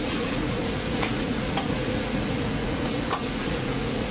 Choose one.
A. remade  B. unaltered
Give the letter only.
A